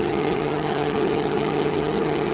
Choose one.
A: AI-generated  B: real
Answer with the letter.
A